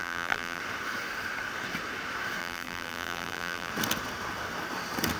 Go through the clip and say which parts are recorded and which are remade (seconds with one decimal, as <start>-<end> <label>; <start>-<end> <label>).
0.0-0.6 remade; 0.6-2.4 recorded; 2.4-3.7 remade; 3.7-5.2 recorded